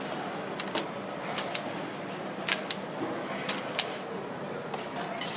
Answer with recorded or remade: recorded